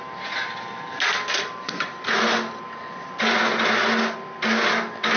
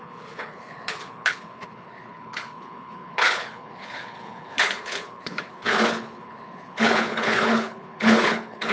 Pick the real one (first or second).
first